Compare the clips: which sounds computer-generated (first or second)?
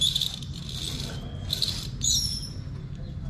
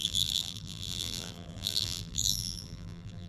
second